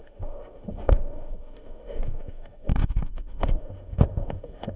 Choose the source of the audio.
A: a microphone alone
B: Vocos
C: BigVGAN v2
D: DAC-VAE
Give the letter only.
D